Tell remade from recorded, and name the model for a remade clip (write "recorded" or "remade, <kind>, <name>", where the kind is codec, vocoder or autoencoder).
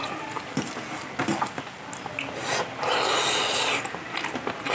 recorded